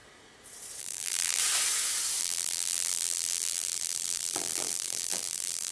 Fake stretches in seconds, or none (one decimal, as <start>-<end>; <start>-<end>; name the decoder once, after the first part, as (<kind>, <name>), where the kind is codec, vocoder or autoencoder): 0.8-1.4 (vocoder, BigVGAN v2); 2.2-5.7